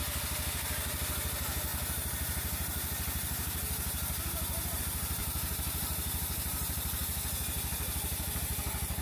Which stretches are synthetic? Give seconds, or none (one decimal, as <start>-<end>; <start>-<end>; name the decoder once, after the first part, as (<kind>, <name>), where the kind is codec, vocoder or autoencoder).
1.7-4.8 (vocoder, BigVGAN v2); 5.2-8.4